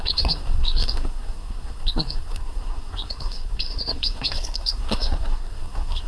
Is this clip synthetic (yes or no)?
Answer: yes